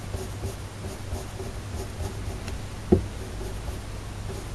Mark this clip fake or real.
real